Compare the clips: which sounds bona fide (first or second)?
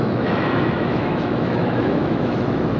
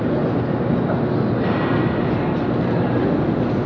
second